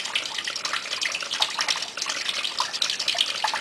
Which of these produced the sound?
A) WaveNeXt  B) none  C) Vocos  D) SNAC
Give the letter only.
B